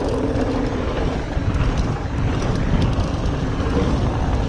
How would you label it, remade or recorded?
recorded